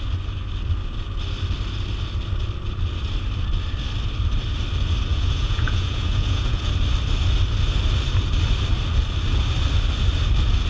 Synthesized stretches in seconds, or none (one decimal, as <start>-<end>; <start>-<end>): 5.1-6.6